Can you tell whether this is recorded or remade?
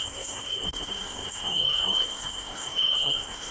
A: remade